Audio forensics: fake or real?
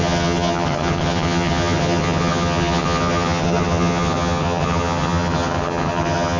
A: fake